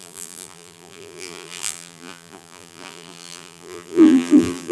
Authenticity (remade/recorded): remade